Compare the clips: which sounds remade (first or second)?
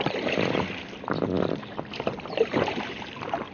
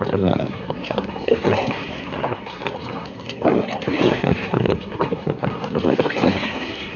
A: second